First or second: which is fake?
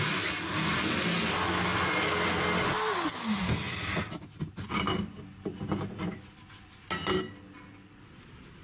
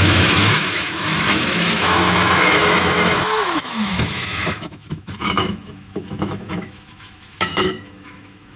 second